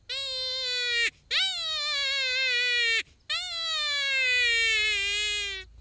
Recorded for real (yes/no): yes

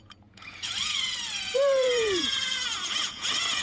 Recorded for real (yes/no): no